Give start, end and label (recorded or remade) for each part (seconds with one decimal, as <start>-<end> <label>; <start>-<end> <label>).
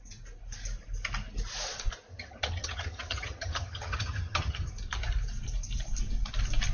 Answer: 0.0-2.1 recorded; 2.1-4.7 remade; 4.7-6.7 recorded